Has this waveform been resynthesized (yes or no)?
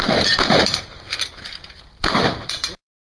yes